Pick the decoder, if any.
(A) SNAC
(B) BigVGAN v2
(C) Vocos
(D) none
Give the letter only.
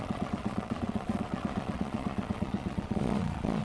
C